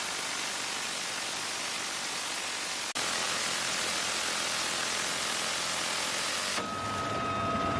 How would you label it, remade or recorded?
recorded